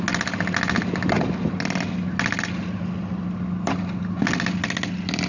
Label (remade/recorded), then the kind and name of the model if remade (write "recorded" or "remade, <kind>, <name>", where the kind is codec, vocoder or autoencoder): recorded